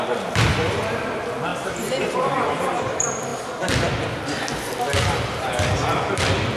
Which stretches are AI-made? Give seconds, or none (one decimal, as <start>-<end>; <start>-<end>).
0.0-1.5; 2.1-3.3; 4.8-6.6